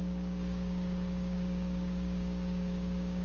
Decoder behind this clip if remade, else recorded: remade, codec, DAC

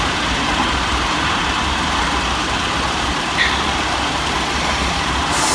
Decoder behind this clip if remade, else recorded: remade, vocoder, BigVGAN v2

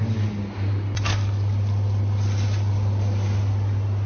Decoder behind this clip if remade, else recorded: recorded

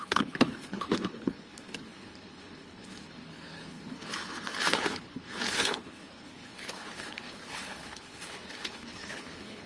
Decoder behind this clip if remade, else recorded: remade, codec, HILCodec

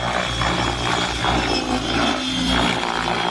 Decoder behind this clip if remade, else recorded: recorded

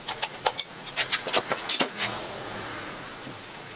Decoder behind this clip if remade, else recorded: remade, vocoder, Vocos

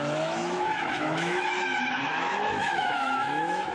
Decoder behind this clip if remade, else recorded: remade, autoencoder, DAC-VAE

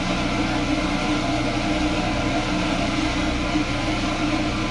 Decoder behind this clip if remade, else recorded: recorded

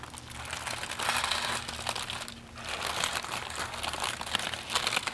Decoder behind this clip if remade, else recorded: recorded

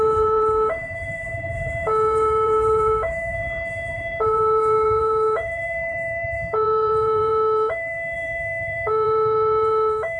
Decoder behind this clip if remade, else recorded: remade, vocoder, BigVGAN v2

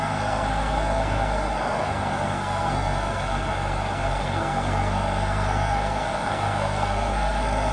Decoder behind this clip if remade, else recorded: remade, codec, SNAC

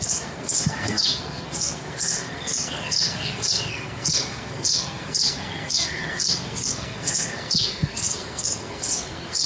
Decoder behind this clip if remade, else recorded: remade, codec, SNAC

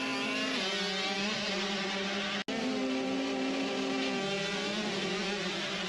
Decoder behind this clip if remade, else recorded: recorded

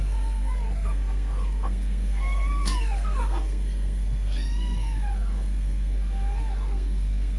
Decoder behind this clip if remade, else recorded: remade, codec, SNAC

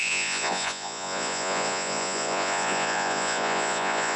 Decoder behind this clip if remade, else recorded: remade, vocoder, Vocos